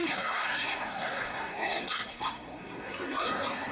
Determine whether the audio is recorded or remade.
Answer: remade